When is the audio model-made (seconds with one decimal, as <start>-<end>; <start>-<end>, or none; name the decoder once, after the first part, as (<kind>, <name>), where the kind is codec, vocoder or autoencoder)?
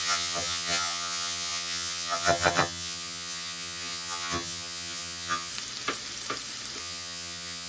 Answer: 0.0-5.5 (vocoder, HiFi-GAN); 6.8-7.7